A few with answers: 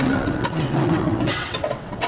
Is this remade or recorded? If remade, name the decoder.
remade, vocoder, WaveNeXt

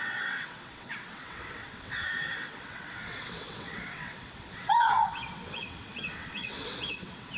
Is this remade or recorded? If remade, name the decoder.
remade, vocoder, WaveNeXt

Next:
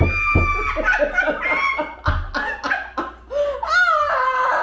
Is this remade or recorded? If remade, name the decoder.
recorded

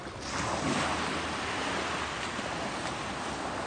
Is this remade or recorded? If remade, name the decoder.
recorded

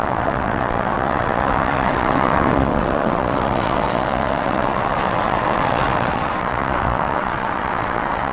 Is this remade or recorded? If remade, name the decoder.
remade, vocoder, WaveNeXt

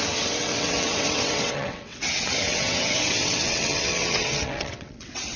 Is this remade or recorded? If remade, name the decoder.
remade, vocoder, WaveNeXt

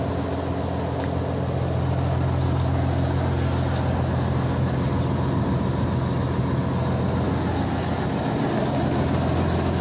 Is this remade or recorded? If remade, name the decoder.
recorded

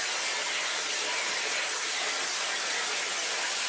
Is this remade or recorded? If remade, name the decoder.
recorded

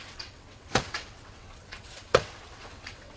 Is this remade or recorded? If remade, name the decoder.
remade, vocoder, WaveNeXt